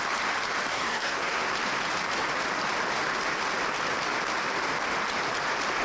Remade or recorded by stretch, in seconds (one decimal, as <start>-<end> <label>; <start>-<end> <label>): 0.0-0.7 recorded; 0.7-1.4 remade; 1.4-5.8 recorded